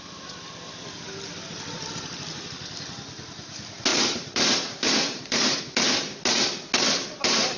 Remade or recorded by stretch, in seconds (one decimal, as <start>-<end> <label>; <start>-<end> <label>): 0.0-3.9 recorded; 3.9-5.6 remade; 5.6-7.6 recorded